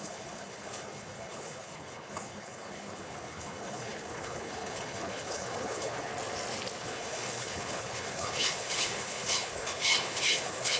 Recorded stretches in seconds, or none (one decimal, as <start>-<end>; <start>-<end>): 6.1-6.8